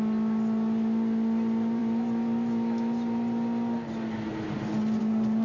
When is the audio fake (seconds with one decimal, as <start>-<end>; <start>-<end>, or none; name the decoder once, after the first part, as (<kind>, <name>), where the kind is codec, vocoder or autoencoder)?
none